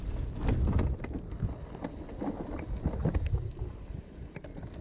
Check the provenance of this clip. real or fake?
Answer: real